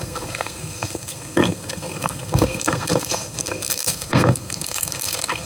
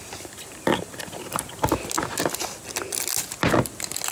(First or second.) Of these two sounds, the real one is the second